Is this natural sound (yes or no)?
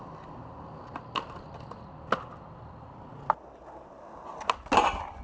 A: yes